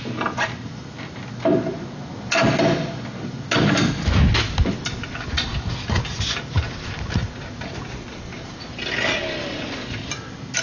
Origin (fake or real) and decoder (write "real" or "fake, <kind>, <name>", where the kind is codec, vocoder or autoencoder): real